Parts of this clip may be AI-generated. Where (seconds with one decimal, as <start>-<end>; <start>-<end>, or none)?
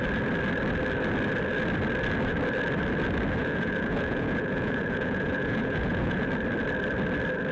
3.4-6.3